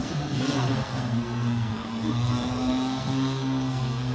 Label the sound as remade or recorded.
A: remade